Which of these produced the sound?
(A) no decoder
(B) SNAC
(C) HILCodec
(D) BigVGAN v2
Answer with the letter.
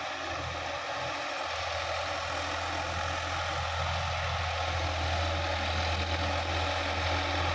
A